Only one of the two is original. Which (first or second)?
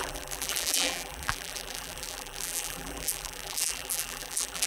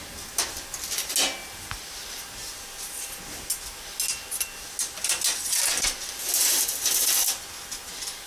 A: second